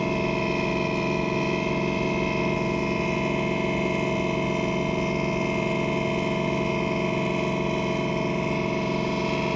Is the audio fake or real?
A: real